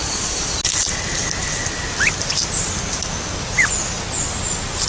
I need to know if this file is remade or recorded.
recorded